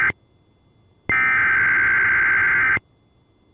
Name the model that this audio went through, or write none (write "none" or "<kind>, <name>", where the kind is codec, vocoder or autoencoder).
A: none